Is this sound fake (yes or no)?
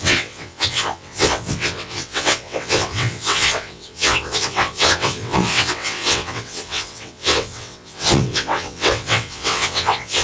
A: yes